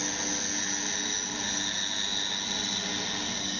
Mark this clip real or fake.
real